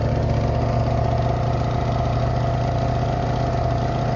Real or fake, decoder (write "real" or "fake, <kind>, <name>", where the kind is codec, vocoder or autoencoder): real